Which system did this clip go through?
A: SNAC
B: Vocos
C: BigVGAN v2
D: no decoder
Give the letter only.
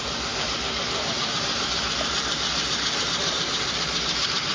C